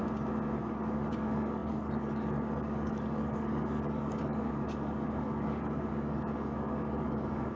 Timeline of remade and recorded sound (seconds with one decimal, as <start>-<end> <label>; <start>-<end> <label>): 0.0-0.6 recorded; 0.6-7.6 remade